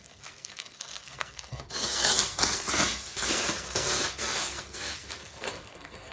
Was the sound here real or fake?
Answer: fake